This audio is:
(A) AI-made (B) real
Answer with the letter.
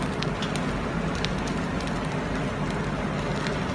B